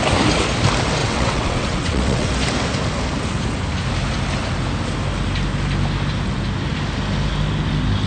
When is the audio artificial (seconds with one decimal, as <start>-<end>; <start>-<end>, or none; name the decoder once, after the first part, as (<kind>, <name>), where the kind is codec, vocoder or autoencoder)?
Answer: 1.0-2.3 (vocoder, WaveNeXt)